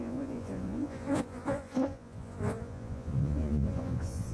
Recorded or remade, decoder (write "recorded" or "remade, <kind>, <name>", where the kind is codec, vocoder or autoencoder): remade, vocoder, Vocos